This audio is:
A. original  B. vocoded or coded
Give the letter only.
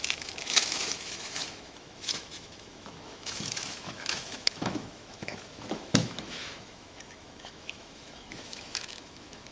B